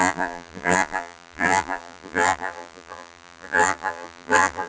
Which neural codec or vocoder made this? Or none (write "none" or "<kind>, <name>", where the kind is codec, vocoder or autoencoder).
vocoder, BigVGAN v2